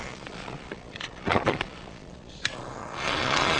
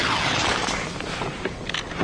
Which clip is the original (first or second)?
second